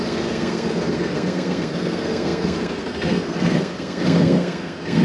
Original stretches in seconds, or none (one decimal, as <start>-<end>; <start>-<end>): none